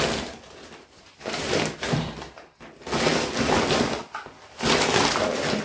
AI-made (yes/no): no